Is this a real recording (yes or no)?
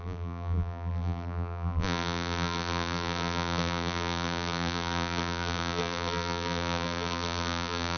no